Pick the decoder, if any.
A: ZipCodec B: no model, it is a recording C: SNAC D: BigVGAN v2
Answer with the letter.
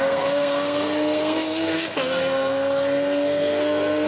C